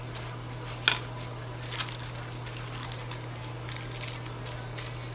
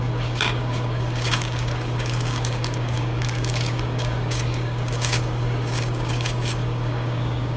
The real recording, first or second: first